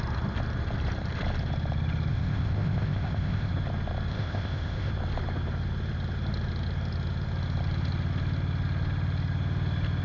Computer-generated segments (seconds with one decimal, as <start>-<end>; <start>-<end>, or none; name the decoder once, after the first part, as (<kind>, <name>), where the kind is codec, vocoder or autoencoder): 2.1-3.5 (codec, ZipCodec); 4.1-4.9

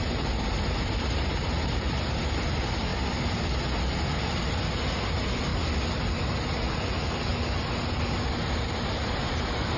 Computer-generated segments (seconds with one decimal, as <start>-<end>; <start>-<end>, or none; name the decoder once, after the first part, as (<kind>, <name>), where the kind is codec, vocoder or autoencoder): 0.0-2.9 (vocoder, BigVGAN v2); 4.7-5.5; 8.5-9.8

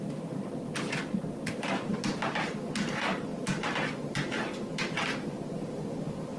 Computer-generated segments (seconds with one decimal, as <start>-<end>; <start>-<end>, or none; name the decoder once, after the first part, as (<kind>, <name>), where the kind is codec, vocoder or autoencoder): none

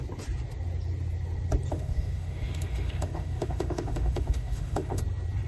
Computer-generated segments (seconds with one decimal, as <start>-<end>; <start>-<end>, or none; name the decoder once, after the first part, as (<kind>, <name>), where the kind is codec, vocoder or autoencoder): 1.7-5.0 (autoencoder, DAC-VAE)

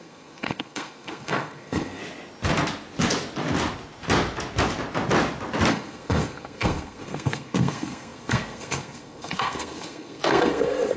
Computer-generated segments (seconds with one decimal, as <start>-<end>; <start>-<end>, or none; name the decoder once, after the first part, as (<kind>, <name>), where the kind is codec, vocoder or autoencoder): 0.0-2.0 (codec, SNAC); 5.7-11.0

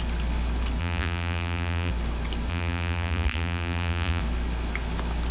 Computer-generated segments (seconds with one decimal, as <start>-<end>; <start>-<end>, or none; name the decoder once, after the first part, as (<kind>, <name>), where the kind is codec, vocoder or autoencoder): 0.8-1.9 (vocoder, BigVGAN v2); 2.5-4.2